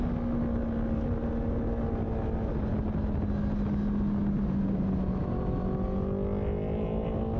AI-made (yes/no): no